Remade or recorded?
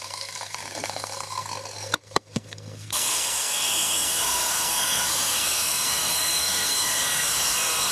remade